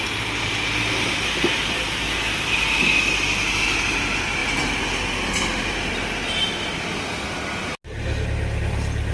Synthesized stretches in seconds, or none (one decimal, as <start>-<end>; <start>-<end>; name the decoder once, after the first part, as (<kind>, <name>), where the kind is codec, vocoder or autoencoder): none